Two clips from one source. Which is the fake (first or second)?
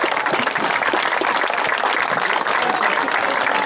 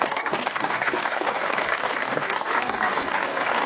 second